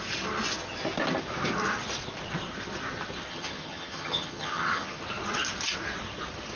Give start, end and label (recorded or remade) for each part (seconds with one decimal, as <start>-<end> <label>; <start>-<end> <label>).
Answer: 0.0-3.3 recorded; 3.3-5.0 remade; 5.0-6.6 recorded